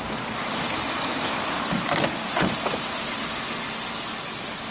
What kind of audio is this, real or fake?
real